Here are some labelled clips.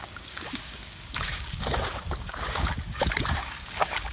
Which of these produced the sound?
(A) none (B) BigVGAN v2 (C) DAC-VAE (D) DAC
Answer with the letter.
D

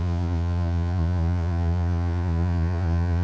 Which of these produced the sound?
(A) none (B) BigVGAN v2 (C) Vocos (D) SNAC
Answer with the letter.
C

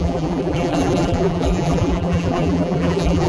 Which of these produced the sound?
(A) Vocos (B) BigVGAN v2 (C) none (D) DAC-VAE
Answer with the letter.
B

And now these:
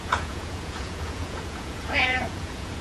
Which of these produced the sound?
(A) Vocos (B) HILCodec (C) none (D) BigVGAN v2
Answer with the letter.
A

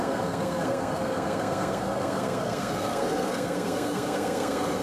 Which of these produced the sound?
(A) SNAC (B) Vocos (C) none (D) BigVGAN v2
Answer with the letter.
A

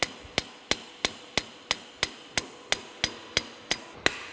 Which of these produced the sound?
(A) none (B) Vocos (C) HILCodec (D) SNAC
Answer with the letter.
A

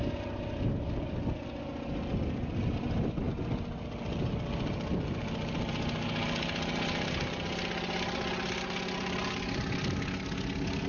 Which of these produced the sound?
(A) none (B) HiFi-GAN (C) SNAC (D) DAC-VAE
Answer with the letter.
A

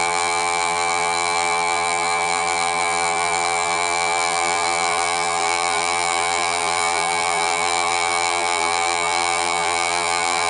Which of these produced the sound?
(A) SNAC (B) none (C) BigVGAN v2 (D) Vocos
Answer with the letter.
C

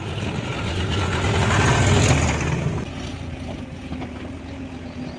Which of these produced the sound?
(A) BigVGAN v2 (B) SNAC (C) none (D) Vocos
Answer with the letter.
C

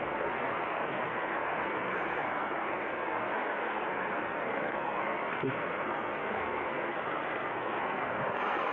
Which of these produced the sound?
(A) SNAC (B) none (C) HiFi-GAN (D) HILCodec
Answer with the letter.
A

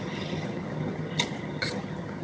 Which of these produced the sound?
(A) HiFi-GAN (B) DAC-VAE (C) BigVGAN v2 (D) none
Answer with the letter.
A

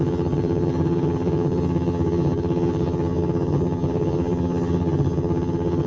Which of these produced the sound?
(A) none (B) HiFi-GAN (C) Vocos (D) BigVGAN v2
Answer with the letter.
B